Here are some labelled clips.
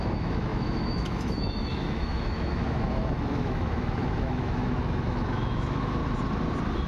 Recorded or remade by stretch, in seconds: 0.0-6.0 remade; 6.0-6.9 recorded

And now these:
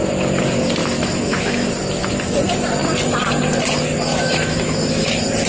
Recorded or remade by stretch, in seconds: 0.0-0.8 recorded; 0.8-1.7 remade; 1.7-4.1 recorded; 4.1-5.1 remade; 5.1-5.5 recorded

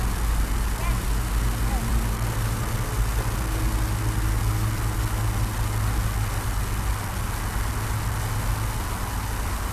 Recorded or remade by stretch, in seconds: 0.0-9.7 recorded

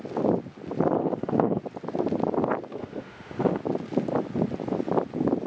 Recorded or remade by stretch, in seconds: 0.0-1.0 recorded; 1.0-1.6 remade; 1.6-2.8 recorded; 2.8-3.6 remade; 3.6-5.5 recorded

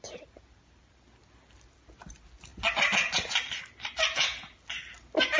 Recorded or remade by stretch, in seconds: 0.0-5.4 recorded

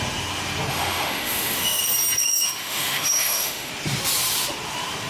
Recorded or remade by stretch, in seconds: 0.0-0.7 recorded; 0.7-1.8 remade; 1.8-2.2 recorded; 2.2-3.7 remade; 3.7-5.1 recorded